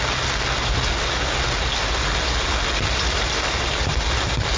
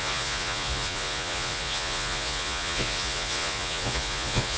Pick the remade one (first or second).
second